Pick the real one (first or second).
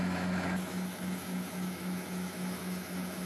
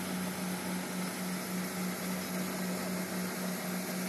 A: second